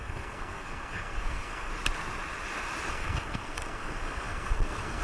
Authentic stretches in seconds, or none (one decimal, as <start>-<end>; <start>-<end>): 1.7-2.9